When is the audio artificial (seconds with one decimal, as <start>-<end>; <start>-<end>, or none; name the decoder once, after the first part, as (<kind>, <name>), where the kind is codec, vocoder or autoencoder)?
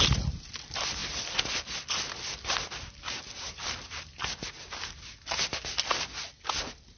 none